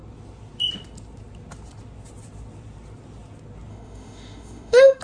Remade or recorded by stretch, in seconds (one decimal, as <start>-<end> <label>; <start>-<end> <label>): 0.0-3.7 recorded; 3.7-5.0 remade